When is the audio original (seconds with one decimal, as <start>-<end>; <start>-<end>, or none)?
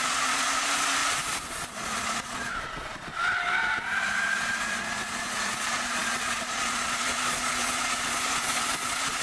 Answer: 3.1-3.8